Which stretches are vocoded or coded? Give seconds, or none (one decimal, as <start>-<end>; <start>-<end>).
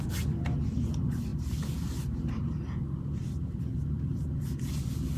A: none